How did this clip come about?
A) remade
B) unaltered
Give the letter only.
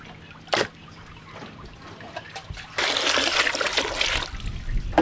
B